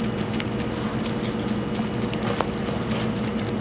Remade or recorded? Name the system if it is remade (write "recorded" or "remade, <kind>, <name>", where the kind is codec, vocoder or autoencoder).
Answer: recorded